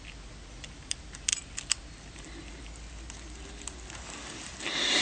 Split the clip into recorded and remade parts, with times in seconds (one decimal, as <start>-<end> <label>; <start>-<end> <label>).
0.0-5.0 recorded